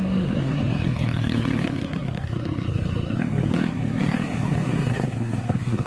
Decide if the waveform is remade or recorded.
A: remade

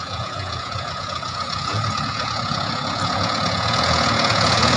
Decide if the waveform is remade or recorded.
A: remade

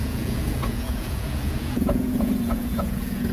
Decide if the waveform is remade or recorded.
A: remade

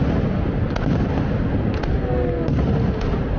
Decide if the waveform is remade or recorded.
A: recorded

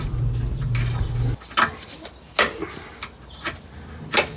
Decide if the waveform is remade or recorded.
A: recorded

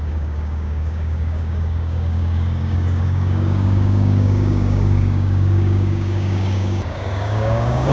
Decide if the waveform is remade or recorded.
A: remade